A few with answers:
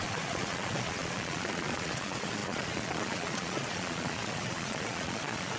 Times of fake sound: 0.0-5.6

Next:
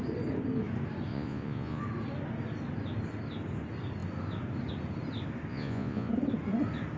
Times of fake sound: 1.1-1.8; 5.5-6.1

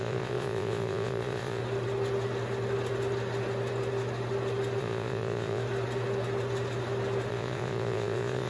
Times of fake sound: 0.0-1.6; 4.8-5.6; 7.3-8.5

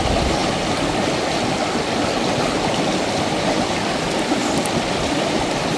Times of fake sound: none